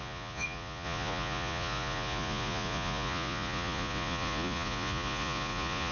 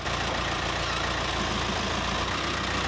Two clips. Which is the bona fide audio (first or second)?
second